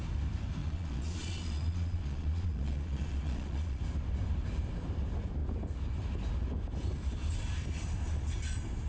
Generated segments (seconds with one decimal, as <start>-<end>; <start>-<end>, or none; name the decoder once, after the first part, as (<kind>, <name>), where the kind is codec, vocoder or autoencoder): 0.6-3.8 (vocoder, Vocos)